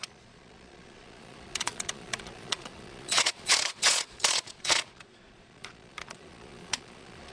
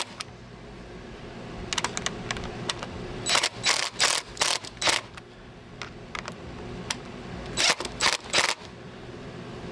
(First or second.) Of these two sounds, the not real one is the first